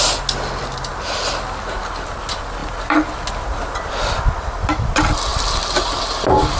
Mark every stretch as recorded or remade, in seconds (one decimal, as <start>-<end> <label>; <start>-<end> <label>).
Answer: 0.0-6.6 recorded